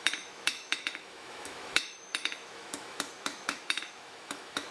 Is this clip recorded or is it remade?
remade